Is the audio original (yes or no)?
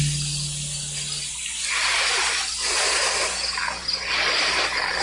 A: yes